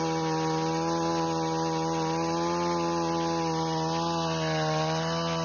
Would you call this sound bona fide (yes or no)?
yes